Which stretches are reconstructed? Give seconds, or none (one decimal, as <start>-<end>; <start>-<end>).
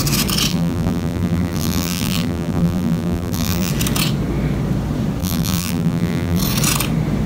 0.5-3.7; 5.2-6.4